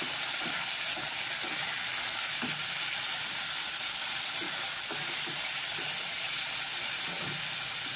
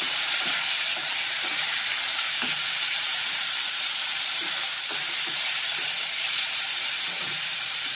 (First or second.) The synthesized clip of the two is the second